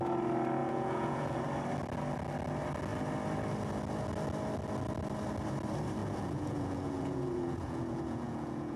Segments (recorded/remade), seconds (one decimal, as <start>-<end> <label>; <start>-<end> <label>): 0.0-0.6 recorded; 0.6-1.4 remade; 1.4-6.0 recorded; 6.0-8.8 remade